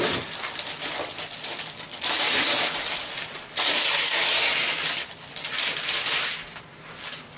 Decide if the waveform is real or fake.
real